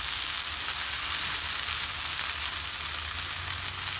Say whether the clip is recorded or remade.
recorded